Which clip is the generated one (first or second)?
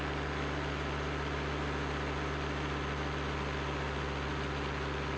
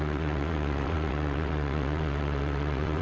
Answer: second